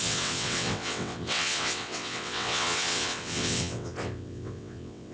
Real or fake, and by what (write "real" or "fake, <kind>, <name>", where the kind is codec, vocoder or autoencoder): fake, vocoder, WaveNeXt